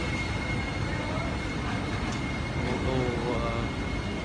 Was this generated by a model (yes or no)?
no